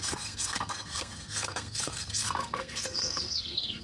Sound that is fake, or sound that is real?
fake